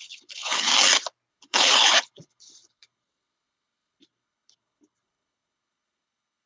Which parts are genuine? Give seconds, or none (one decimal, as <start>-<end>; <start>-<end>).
0.7-1.3